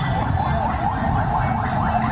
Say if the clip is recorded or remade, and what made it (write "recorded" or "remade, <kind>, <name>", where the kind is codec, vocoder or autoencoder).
recorded